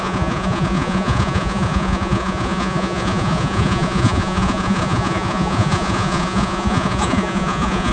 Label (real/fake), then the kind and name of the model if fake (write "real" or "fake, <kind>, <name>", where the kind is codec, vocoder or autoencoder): fake, vocoder, Vocos